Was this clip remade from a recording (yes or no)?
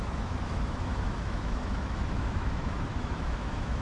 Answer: yes